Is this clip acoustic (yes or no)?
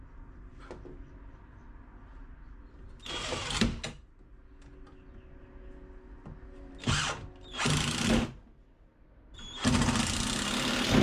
yes